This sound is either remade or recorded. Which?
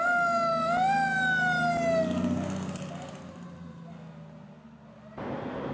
recorded